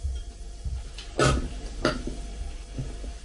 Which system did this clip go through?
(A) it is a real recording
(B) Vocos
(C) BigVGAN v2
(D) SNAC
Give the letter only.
A